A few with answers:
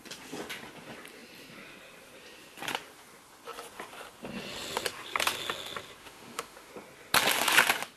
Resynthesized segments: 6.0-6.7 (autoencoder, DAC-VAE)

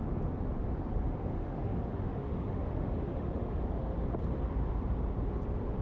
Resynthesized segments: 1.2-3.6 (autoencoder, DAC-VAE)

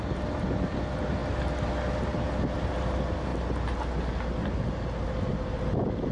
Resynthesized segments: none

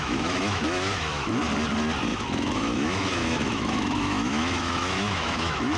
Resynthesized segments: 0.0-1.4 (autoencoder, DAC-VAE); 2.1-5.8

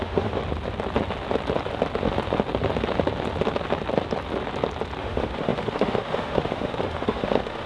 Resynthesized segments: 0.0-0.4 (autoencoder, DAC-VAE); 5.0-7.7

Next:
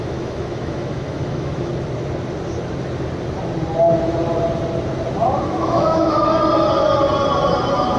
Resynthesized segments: 0.0-1.7 (autoencoder, DAC-VAE); 5.4-6.3

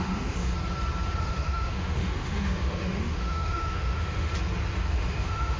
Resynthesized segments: 0.0-0.5 (autoencoder, DAC-VAE); 1.2-4.3; 4.8-5.6

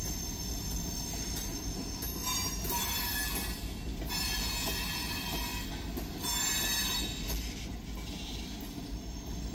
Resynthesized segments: none